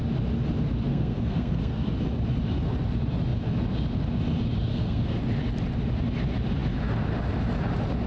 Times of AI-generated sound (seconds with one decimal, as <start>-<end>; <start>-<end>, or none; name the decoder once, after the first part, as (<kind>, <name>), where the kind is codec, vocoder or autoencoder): 0.9-1.9 (codec, SNAC); 4.7-5.2